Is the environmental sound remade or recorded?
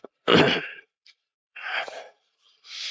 recorded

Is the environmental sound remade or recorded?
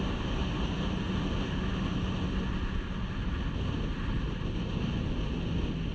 recorded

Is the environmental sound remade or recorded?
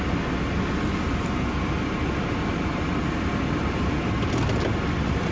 recorded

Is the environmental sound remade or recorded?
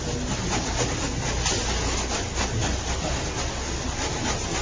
recorded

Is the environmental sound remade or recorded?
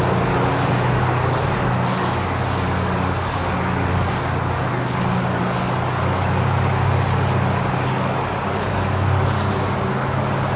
remade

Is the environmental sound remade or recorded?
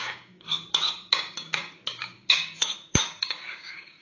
remade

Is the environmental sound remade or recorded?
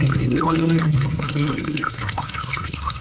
remade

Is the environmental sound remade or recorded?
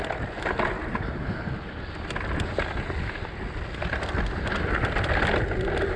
recorded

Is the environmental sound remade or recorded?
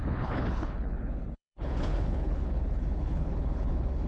remade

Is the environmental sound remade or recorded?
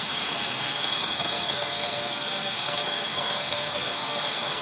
remade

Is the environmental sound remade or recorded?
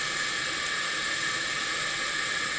recorded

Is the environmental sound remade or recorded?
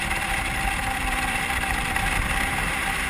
remade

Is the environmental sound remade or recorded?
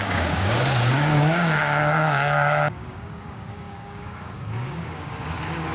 remade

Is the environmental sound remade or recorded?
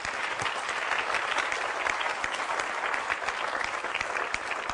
recorded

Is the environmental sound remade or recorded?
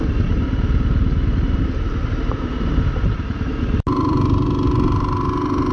recorded